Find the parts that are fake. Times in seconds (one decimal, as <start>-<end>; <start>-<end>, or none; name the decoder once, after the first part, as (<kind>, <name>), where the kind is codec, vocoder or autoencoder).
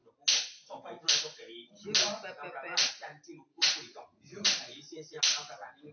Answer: 3.5-5.2 (vocoder, Vocos)